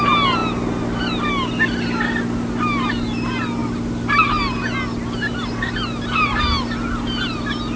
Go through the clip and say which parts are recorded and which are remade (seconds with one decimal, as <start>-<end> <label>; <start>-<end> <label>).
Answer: 0.0-7.8 recorded